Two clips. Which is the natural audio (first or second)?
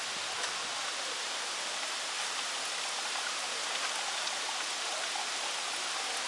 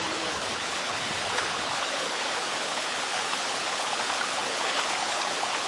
first